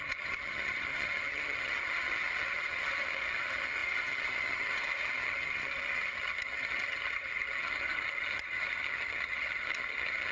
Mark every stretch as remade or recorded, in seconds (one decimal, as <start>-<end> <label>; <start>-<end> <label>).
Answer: 0.0-10.3 remade